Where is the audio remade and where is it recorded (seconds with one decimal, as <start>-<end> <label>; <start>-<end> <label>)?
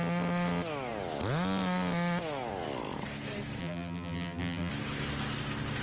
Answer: 0.0-3.6 recorded; 3.6-4.7 remade; 4.7-5.8 recorded